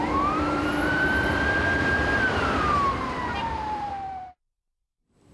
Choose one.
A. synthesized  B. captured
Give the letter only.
A